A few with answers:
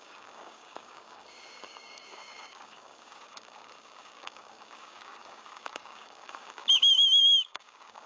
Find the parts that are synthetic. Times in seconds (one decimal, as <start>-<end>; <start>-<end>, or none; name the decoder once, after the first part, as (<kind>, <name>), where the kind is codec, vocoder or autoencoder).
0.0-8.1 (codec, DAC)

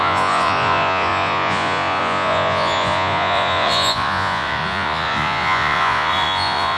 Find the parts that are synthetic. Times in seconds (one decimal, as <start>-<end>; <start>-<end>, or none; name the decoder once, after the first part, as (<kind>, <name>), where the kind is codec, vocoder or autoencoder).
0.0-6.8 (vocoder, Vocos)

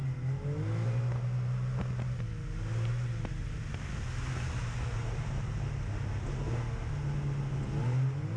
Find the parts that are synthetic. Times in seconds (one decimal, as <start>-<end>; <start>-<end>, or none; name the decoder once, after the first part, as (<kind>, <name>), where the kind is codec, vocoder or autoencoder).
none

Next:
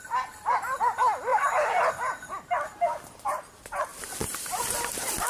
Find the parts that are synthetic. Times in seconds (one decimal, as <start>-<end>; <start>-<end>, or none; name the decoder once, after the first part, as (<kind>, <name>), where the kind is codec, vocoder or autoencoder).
1.3-1.9 (vocoder, BigVGAN v2); 3.9-4.6